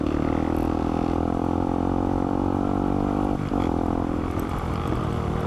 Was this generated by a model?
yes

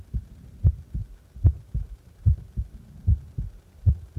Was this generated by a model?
no